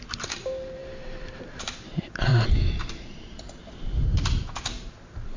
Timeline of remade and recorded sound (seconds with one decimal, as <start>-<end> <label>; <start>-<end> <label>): 0.0-5.4 remade

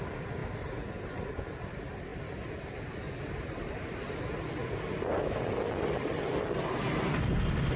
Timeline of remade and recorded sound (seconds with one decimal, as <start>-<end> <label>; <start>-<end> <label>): 0.0-7.8 recorded